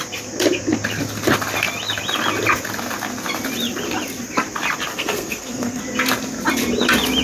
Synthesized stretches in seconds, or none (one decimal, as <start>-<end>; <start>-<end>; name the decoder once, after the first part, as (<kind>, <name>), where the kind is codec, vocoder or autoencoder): 4.9-5.8 (codec, SNAC)